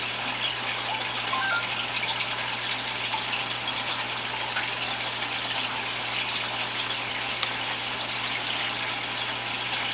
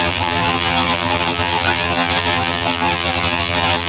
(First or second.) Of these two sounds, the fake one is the second